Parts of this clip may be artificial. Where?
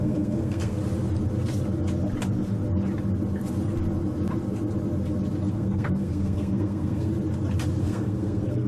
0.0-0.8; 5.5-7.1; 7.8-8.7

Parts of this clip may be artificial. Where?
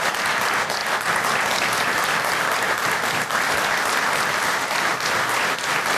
none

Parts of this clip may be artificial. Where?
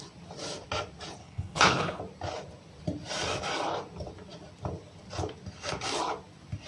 1.2-2.0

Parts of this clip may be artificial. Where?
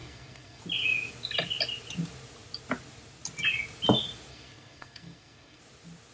0.0-0.6; 4.3-5.6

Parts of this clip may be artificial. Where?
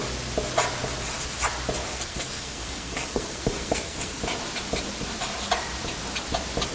1.9-4.2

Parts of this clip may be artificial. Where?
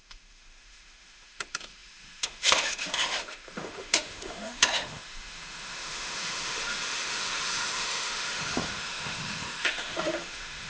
0.0-10.7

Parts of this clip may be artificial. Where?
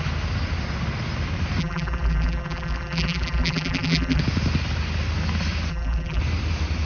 1.6-4.2; 5.7-6.2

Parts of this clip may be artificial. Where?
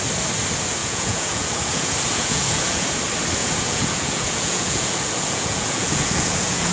0.8-3.0; 3.4-6.7